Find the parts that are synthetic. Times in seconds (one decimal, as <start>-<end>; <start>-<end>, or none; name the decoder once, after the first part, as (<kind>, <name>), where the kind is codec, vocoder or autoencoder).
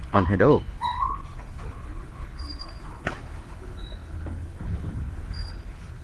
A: 0.0-6.0 (codec, HILCodec)